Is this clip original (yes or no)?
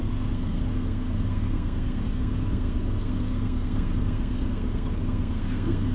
no